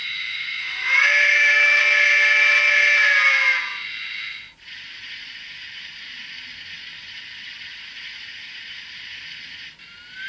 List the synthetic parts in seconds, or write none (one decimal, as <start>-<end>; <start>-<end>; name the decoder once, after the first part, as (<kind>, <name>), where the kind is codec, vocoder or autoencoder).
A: 0.0-1.8 (autoencoder, DAC-VAE)